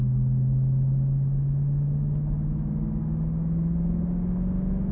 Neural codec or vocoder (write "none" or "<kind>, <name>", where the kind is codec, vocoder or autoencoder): none